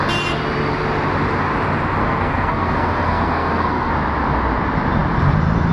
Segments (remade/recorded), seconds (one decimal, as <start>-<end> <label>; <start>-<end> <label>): 0.0-2.0 recorded; 2.0-3.9 remade; 3.9-5.7 recorded